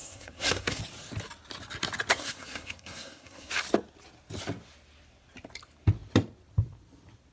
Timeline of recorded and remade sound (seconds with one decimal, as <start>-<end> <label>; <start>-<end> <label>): 0.0-0.8 remade; 0.8-2.1 recorded; 2.1-3.5 remade; 3.5-7.3 recorded